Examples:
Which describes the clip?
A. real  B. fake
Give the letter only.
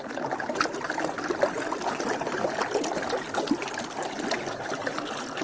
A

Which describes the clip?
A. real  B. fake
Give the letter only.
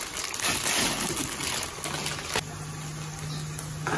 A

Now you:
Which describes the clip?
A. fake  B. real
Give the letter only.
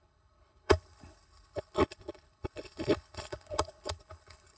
A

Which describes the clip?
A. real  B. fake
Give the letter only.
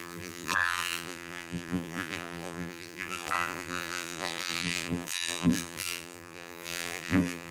B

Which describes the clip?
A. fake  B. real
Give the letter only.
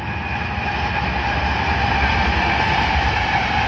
B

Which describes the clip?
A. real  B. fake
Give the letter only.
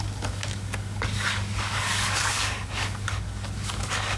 B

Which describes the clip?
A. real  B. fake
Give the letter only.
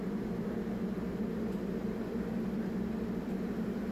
A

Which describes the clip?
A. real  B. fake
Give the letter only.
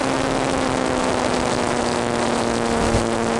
A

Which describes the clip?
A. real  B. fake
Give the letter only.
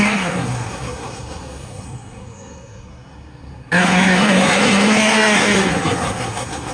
B